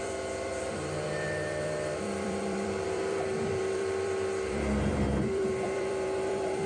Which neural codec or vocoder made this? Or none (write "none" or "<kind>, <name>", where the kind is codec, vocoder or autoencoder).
vocoder, BigVGAN v2